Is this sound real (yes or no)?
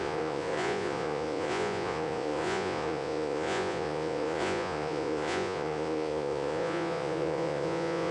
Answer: no